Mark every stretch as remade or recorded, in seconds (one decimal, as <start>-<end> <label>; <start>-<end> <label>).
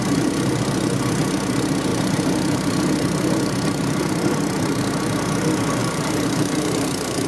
0.0-1.9 recorded; 1.9-4.8 remade; 4.8-5.8 recorded; 5.8-7.3 remade